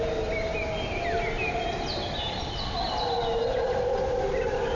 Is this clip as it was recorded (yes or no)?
yes